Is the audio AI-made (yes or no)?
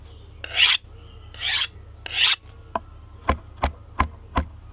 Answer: no